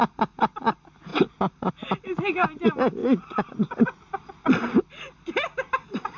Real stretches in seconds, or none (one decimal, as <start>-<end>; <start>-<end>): 0.0-3.0; 4.1-6.2